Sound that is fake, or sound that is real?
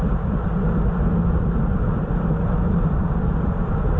real